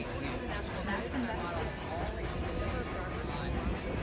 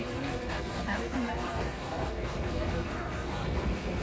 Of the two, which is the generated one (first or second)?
second